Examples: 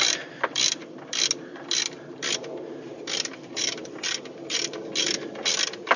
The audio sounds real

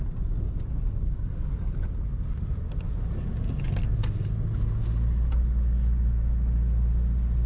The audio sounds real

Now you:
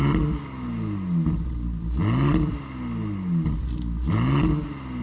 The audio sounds real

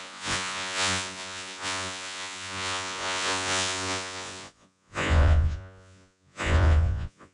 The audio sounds fake